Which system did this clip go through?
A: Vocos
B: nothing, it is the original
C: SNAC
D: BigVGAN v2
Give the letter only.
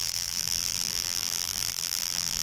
D